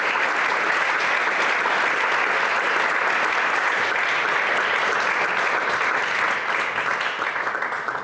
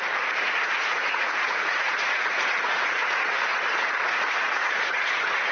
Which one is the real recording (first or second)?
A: first